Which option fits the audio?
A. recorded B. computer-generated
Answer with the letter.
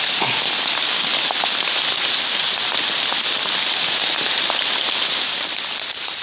A